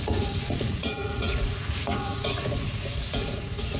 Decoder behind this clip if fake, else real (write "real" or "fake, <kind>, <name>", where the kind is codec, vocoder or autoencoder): fake, vocoder, Vocos